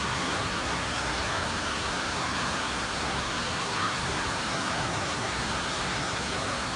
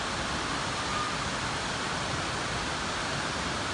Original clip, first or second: second